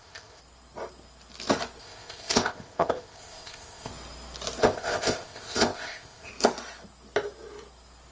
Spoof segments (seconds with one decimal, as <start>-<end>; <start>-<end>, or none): 0.0-0.4; 1.8-3.9; 4.6-6.3